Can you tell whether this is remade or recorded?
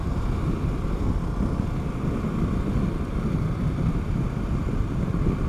recorded